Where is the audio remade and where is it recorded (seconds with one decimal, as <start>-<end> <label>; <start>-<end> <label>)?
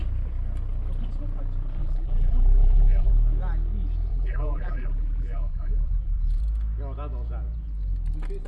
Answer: 0.0-1.8 recorded; 1.8-3.1 remade; 3.1-4.1 recorded; 4.1-6.4 remade; 6.4-8.5 recorded